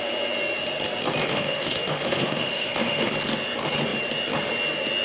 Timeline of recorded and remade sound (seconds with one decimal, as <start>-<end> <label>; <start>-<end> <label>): 0.0-1.2 recorded; 1.2-3.1 remade; 3.1-5.0 recorded